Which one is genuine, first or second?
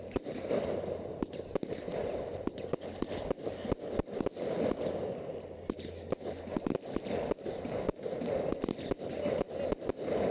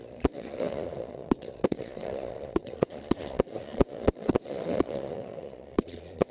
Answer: first